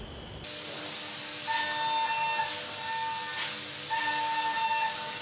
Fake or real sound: real